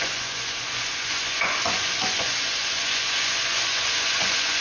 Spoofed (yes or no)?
yes